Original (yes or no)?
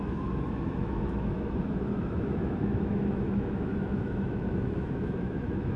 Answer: no